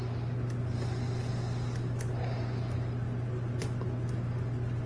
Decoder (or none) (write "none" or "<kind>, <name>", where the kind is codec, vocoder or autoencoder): none